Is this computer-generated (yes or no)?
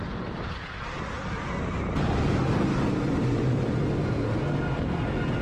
no